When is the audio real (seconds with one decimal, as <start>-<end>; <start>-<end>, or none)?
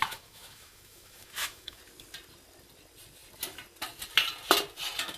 1.8-5.2